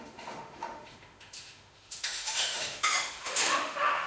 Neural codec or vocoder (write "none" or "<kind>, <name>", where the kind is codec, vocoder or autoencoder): autoencoder, DAC-VAE